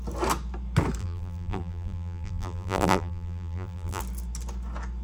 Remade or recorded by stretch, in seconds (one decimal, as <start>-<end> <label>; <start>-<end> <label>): 0.0-1.0 recorded; 1.0-4.0 remade; 4.0-5.0 recorded